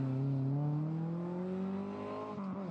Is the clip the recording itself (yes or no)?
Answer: yes